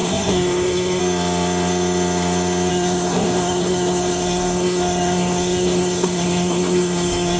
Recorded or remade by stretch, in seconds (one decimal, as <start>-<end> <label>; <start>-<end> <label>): 0.0-1.0 remade; 1.0-2.7 recorded; 2.7-7.4 remade